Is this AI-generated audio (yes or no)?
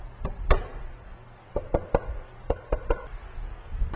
no